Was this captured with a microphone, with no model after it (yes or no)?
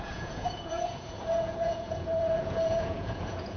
no